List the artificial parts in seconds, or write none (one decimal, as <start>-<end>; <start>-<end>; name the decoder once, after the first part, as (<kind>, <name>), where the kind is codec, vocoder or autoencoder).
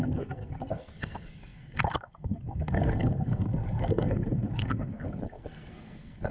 0.0-6.3 (codec, SNAC)